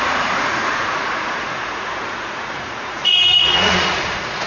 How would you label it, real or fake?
fake